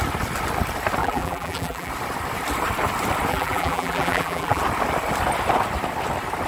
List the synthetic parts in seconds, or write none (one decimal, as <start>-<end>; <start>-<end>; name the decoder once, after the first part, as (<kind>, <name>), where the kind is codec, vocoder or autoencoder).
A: 1.0-1.9 (vocoder, BigVGAN v2); 3.3-4.6